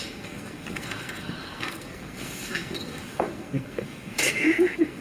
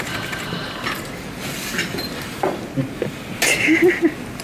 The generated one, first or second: first